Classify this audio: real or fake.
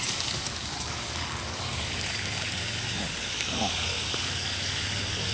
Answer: fake